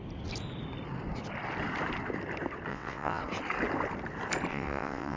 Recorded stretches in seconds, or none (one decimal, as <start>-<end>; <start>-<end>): 0.0-2.7; 3.2-4.5

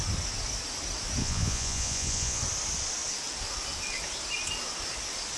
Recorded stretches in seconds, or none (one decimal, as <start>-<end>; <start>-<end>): 0.0-1.2; 2.4-5.4